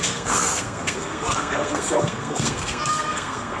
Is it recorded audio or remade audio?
remade